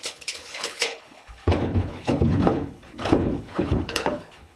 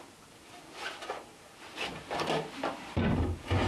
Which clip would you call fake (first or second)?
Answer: first